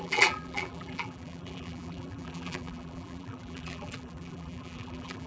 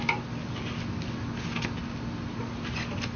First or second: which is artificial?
first